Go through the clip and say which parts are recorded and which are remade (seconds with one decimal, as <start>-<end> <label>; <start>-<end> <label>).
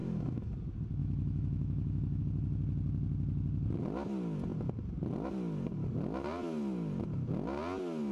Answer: 0.0-0.5 remade; 0.5-1.0 recorded; 1.0-2.2 remade; 2.2-8.1 recorded